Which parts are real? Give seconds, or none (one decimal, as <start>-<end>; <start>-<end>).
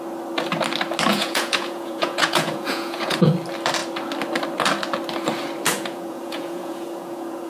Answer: 0.0-1.1; 3.3-5.7